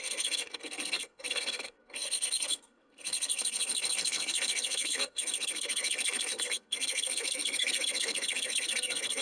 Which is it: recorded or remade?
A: remade